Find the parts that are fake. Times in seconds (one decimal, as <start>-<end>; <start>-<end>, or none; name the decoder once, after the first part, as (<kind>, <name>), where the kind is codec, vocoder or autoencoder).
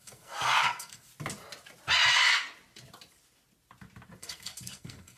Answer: 0.0-1.1 (codec, SNAC); 4.2-5.2